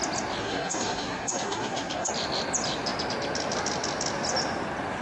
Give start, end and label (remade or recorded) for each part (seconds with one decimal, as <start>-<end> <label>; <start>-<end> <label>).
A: 0.0-0.4 recorded; 0.4-2.1 remade; 2.1-5.0 recorded